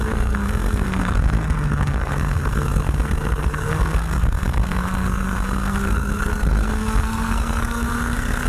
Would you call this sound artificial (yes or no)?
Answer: yes